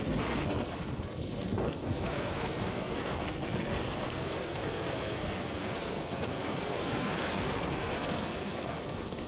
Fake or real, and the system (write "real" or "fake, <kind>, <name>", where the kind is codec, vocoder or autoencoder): fake, codec, SNAC